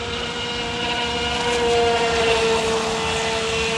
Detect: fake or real real